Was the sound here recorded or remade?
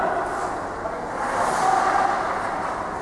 recorded